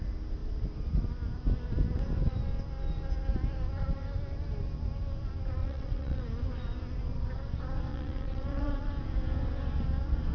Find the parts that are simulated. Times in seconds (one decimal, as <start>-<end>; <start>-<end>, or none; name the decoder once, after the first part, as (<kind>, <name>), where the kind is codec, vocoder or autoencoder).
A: 5.6-6.2 (vocoder, WaveNeXt); 7.9-8.9